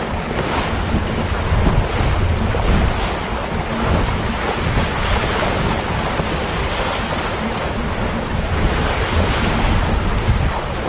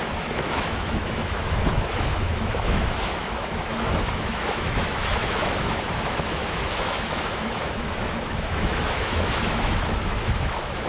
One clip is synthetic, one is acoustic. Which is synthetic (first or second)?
second